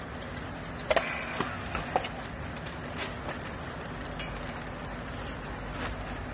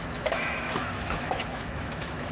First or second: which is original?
first